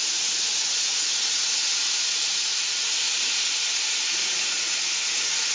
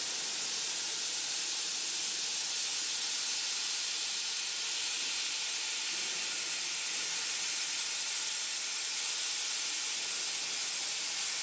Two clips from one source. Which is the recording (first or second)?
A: second